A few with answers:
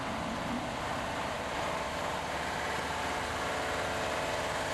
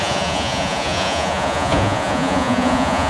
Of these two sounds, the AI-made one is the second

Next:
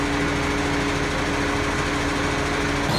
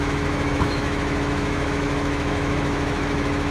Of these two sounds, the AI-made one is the second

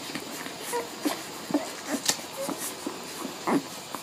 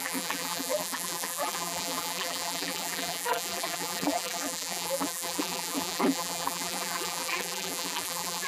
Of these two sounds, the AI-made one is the second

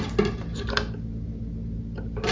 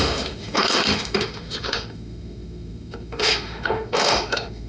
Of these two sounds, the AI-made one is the second